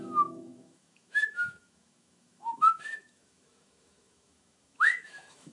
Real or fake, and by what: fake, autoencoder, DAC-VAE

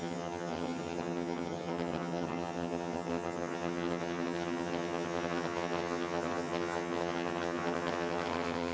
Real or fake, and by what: fake, vocoder, HiFi-GAN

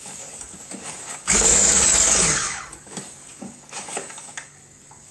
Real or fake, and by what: fake, codec, DAC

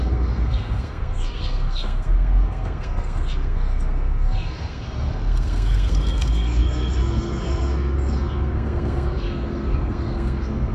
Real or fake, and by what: fake, codec, SNAC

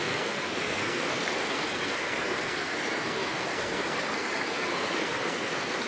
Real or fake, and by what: fake, codec, SNAC